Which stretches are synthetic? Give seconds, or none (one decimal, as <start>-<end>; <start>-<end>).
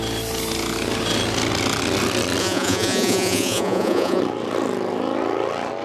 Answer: 2.4-4.2